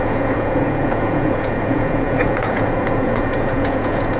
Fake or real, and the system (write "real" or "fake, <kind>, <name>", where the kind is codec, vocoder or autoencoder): fake, vocoder, Vocos